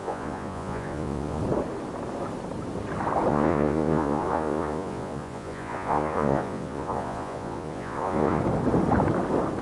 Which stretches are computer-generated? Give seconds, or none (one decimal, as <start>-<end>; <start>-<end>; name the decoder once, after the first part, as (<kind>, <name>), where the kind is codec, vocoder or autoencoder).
0.0-1.4 (vocoder, Vocos); 3.3-8.4